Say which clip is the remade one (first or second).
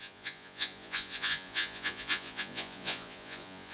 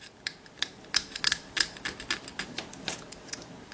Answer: first